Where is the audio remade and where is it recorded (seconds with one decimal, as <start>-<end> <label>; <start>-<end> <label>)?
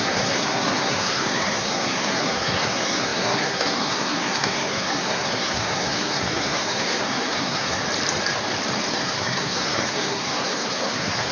0.0-7.8 remade; 7.8-8.9 recorded; 8.9-11.3 remade